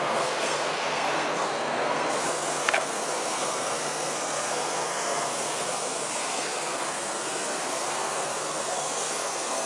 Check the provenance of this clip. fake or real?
fake